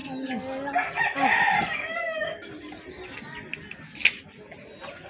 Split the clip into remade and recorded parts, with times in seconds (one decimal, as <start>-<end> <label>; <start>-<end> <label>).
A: 0.0-5.1 recorded